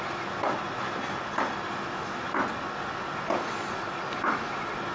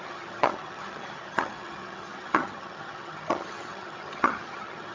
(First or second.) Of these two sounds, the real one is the first